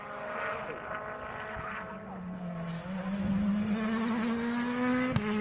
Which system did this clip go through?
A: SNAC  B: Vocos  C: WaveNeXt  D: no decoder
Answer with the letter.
D